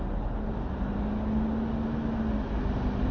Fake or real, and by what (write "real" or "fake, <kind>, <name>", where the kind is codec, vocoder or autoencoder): real